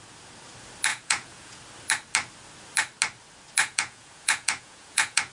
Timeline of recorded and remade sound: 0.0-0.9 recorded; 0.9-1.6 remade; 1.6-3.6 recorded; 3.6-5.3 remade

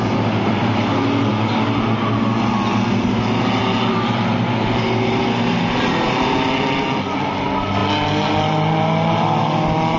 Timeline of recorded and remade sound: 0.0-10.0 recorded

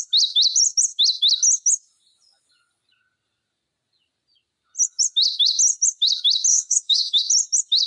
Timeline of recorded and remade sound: 0.0-6.5 recorded; 6.5-7.2 remade; 7.2-7.9 recorded

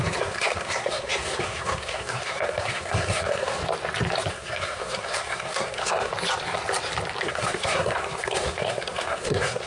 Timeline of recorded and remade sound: 0.0-3.6 remade; 3.6-4.3 recorded; 4.3-6.1 remade; 6.1-7.2 recorded; 7.2-9.7 remade

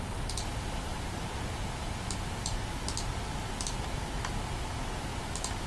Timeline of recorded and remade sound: 0.0-5.7 recorded

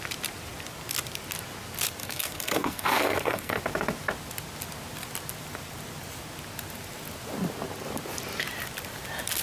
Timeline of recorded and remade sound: 0.0-2.0 recorded; 2.0-3.6 remade; 3.6-9.4 recorded

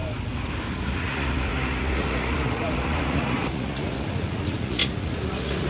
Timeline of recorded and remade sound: 0.0-0.7 recorded; 0.7-5.7 remade

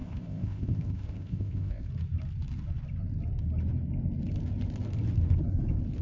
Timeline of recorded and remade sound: 0.0-1.9 remade; 1.9-6.0 recorded